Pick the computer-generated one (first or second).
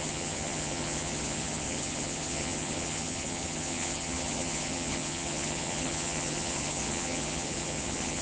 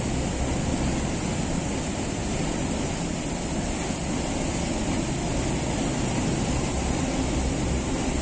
first